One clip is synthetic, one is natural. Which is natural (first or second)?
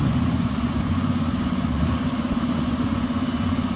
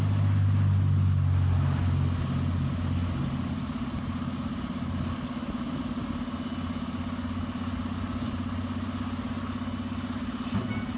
second